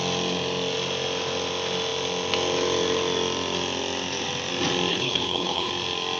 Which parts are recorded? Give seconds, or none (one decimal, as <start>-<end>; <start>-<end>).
0.0-4.9; 5.7-6.2